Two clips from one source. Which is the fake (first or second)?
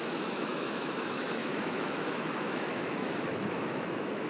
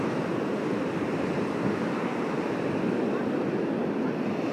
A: first